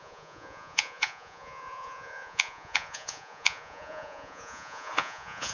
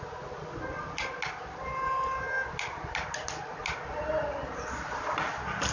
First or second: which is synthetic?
first